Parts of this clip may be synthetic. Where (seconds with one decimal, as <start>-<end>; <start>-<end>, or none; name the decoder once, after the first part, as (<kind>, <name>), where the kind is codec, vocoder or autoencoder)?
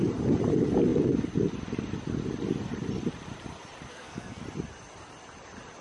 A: 3.9-4.4 (codec, SNAC)